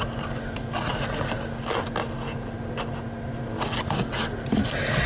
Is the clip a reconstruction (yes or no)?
no